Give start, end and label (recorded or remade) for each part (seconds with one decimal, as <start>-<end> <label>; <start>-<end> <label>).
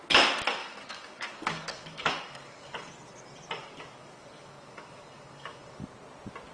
0.0-0.6 recorded; 0.6-2.9 remade; 2.9-3.6 recorded; 3.6-5.8 remade; 5.8-6.5 recorded